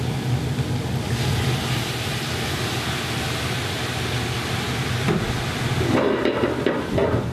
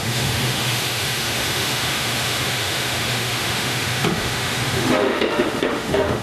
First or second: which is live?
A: first